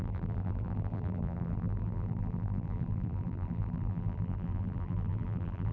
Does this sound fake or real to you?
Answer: fake